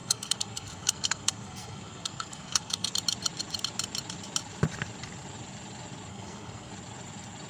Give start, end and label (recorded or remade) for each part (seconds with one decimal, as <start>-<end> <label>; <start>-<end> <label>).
0.0-2.9 remade; 2.9-6.1 recorded; 6.1-6.7 remade; 6.7-7.5 recorded